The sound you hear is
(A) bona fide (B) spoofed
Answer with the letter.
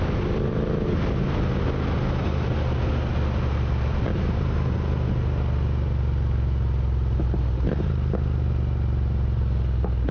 A